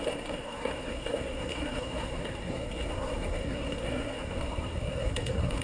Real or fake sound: fake